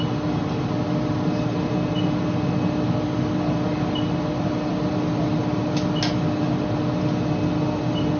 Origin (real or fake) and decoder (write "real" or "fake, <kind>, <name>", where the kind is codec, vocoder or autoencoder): real